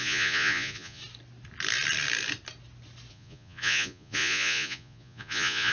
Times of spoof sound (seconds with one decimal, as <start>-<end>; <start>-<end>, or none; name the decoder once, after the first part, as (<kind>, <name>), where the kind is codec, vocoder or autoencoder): 0.0-1.0 (vocoder, Vocos); 3.1-5.7